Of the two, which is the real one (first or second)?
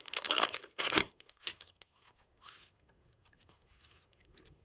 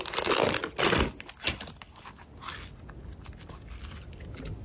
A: second